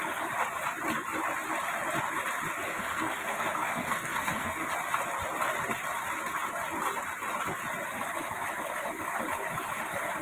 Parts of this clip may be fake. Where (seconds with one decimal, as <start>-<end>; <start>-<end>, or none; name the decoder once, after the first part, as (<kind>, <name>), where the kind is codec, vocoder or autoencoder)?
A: 2.7-4.7 (codec, SNAC)